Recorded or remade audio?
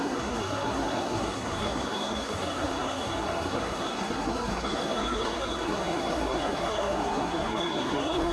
remade